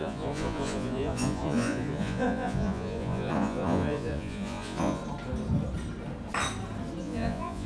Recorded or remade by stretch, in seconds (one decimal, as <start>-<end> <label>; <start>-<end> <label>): 0.0-5.0 remade; 5.0-7.0 recorded; 7.0-7.7 remade